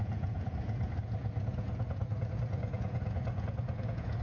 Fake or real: fake